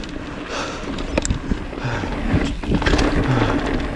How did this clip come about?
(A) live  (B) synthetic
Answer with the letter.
A